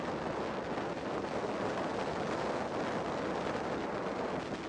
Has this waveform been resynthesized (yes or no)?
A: no